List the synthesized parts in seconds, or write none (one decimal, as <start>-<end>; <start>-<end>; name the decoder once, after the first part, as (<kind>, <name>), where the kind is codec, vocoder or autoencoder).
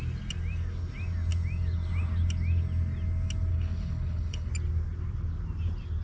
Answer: 3.5-4.5 (codec, HILCodec)